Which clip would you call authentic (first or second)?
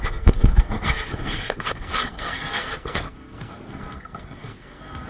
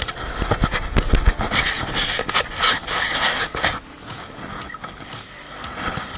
second